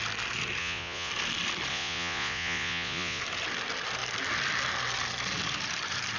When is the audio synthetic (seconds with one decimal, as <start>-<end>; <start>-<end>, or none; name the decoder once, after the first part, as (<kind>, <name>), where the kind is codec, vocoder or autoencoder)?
0.6-1.1 (vocoder, Vocos); 1.7-3.2